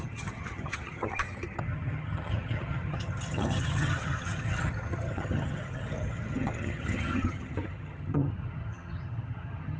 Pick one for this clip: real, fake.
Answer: fake